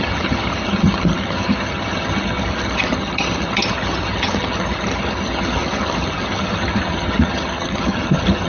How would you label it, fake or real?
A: fake